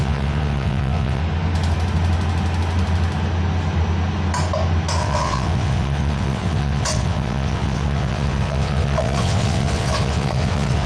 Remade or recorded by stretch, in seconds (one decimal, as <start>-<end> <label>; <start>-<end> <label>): 0.0-1.2 remade; 1.2-5.0 recorded; 5.0-10.9 remade